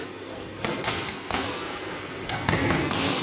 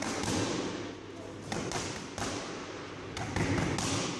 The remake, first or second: first